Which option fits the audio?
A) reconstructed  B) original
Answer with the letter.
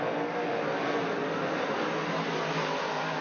B